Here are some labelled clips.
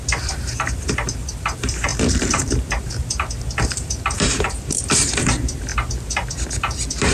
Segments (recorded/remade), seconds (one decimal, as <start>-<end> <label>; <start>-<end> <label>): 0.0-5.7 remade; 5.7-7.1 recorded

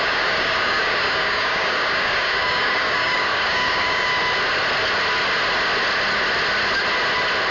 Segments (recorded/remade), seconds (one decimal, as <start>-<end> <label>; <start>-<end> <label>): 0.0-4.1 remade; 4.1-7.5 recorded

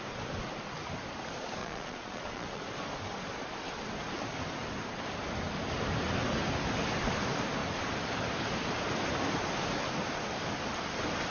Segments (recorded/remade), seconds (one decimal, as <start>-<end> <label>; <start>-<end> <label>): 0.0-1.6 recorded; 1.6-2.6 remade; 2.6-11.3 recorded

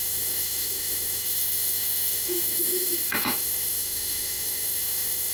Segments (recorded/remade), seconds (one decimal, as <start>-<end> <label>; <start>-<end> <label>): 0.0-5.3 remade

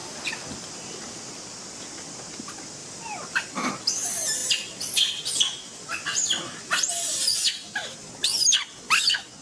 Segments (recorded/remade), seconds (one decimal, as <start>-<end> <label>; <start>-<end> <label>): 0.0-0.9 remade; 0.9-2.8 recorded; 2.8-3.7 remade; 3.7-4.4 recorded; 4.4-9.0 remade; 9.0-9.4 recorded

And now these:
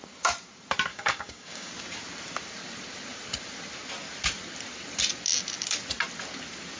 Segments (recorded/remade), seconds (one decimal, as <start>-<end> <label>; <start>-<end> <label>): 0.0-0.9 recorded; 0.9-1.7 remade; 1.7-6.8 recorded